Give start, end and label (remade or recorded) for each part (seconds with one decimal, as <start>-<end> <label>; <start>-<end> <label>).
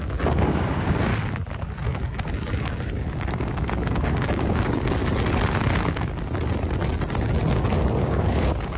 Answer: 0.0-1.1 remade; 1.1-1.8 recorded; 1.8-5.0 remade; 5.0-8.0 recorded; 8.0-8.8 remade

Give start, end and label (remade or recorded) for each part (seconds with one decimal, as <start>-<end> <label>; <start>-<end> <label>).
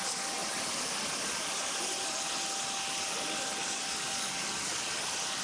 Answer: 0.0-3.6 recorded; 3.6-4.9 remade; 4.9-5.4 recorded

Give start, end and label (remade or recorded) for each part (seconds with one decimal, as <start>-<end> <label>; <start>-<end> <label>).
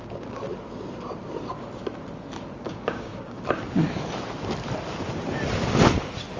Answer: 0.0-2.6 recorded; 2.6-3.4 remade; 3.4-6.4 recorded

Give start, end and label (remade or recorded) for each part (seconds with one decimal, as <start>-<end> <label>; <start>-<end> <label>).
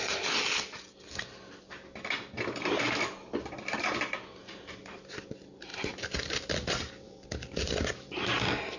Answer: 0.0-8.8 recorded